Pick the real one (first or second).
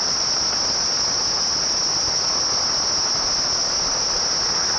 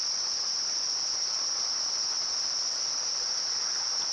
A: first